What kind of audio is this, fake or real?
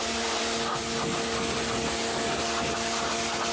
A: real